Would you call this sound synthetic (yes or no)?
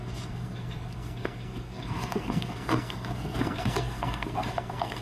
yes